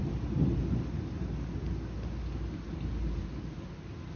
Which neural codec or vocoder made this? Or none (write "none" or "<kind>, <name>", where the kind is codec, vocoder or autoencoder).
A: none